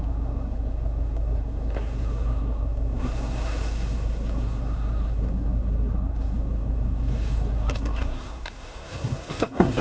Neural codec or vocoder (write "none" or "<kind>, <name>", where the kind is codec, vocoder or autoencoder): codec, SNAC